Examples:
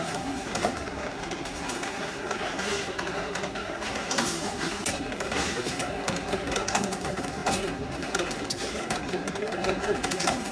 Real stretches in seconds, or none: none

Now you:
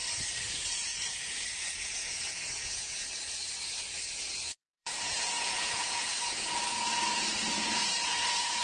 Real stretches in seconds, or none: 0.0-0.5

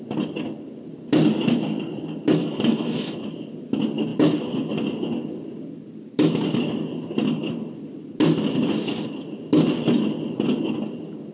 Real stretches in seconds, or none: 0.0-2.4; 3.2-11.3

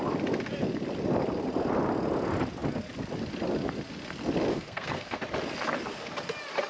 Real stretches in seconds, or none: 0.0-4.5; 5.2-6.7

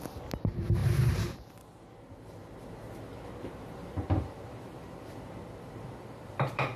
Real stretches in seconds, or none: 0.0-3.1